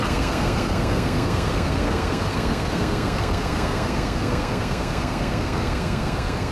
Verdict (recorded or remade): remade